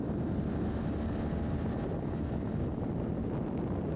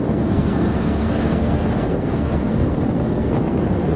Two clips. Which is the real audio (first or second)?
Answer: first